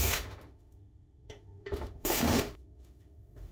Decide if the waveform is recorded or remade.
remade